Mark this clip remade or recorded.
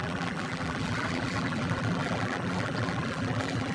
remade